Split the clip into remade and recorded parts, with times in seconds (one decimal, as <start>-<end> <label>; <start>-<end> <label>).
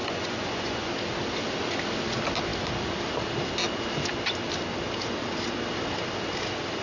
0.0-0.9 remade; 0.9-6.8 recorded